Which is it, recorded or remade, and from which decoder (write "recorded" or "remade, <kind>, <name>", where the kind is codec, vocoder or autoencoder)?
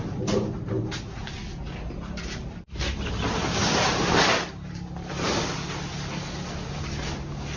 recorded